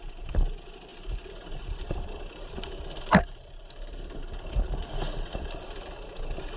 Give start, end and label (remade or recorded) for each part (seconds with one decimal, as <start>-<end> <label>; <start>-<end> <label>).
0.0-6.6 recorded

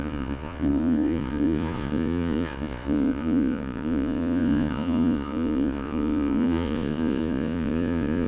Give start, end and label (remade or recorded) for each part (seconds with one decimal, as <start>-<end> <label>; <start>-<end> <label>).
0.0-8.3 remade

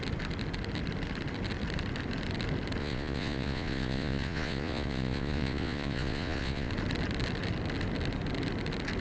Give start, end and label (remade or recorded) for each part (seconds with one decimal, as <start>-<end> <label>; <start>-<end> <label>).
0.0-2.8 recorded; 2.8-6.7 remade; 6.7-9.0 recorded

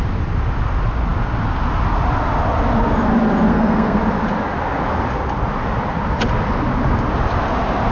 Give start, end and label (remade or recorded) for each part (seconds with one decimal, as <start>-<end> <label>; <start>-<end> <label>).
0.0-3.5 recorded; 3.5-4.0 remade; 4.0-7.9 recorded

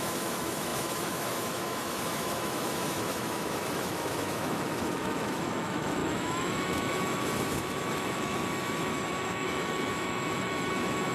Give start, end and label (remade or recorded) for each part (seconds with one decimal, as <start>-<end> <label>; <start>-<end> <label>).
0.0-11.1 remade

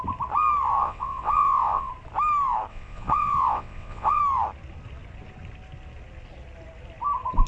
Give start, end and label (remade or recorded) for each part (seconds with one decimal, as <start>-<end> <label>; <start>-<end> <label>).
0.0-0.8 recorded; 0.8-1.9 remade; 1.9-2.7 recorded; 2.7-4.2 remade; 4.2-7.5 recorded

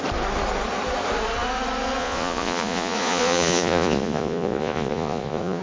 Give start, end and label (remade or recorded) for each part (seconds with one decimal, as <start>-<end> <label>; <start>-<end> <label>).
0.0-2.0 recorded; 2.0-5.6 remade

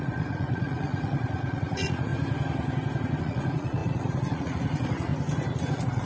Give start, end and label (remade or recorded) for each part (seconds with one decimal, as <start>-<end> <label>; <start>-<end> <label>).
0.0-2.1 remade; 2.1-3.2 recorded; 3.2-5.1 remade; 5.1-5.6 recorded; 5.6-6.1 remade